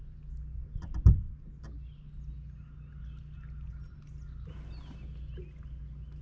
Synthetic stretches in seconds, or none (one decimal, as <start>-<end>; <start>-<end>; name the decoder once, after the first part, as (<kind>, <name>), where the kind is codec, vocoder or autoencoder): none